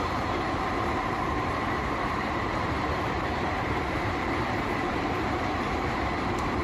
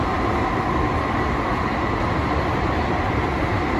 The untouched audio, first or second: second